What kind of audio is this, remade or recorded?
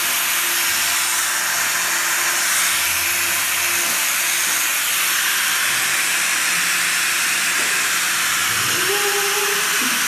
recorded